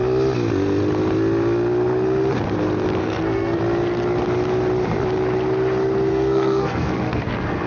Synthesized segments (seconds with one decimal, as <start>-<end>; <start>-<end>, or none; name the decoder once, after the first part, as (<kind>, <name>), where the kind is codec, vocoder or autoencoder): 3.0-3.6 (codec, SNAC); 6.1-7.7

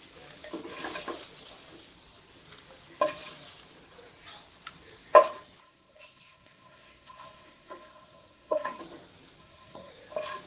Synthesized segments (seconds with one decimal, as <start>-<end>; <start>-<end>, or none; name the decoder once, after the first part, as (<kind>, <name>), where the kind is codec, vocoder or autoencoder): 5.6-8.8 (codec, SNAC); 9.4-9.9

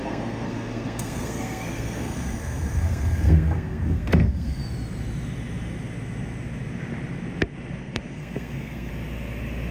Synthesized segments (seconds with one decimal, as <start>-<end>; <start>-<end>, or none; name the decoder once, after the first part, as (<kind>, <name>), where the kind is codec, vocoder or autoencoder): 0.0-4.6 (codec, SNAC); 7.8-8.9

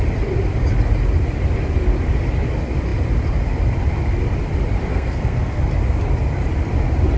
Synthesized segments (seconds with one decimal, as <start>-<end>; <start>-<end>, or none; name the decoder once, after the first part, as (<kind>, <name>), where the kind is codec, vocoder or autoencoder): 4.9-5.6 (codec, SNAC)

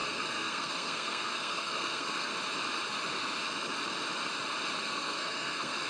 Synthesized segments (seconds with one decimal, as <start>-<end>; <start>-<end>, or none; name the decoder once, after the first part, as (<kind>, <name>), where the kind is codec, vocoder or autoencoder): 0.0-2.3 (codec, SNAC); 4.8-5.9

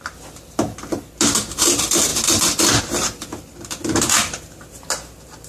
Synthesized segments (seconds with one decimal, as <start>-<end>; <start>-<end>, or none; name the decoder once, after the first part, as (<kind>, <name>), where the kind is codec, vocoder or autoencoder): none

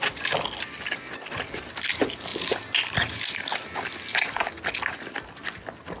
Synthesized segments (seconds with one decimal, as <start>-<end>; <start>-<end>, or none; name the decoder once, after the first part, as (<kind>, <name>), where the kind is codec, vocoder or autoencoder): none